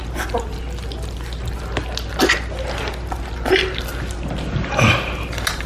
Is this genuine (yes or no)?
yes